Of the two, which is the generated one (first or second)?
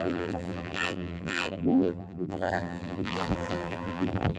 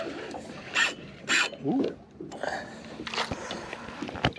first